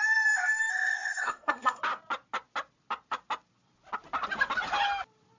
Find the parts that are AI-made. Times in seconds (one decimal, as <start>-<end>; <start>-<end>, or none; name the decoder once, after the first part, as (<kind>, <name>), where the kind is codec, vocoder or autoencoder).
0.7-1.8 (codec, SNAC)